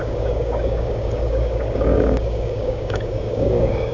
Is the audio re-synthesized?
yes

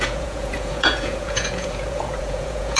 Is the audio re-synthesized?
yes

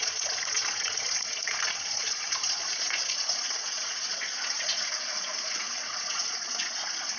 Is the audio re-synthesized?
yes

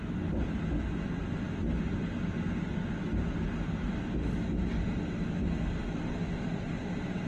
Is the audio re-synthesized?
no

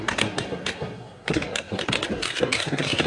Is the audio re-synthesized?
yes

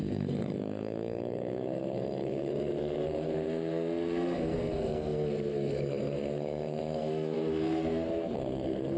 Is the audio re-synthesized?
yes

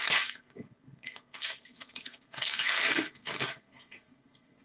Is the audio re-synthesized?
yes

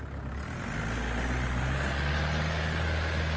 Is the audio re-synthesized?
no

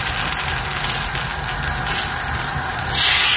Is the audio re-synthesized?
no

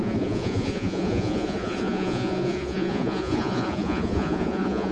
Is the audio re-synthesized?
yes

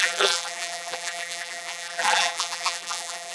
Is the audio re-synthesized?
yes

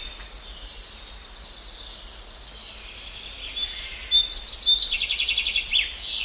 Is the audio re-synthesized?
no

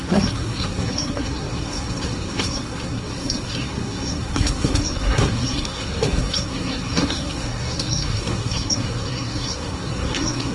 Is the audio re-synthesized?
yes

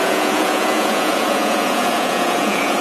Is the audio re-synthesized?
yes